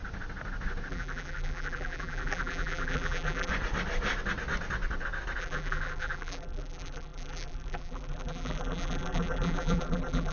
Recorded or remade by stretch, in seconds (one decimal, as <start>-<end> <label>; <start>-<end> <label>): 0.0-0.9 recorded; 0.9-3.5 remade; 3.5-5.4 recorded; 5.4-10.3 remade